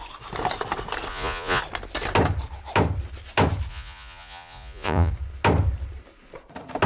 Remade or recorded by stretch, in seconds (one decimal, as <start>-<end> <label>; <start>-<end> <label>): 0.0-1.1 recorded; 1.1-1.6 remade; 1.6-3.7 recorded; 3.7-5.1 remade; 5.1-6.9 recorded